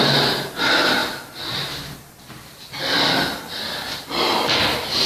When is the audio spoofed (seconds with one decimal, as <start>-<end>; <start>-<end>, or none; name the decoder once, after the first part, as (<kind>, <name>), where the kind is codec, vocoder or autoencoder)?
none